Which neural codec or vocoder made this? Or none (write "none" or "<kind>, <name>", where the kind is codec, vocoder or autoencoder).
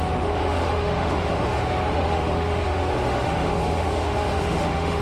autoencoder, DAC-VAE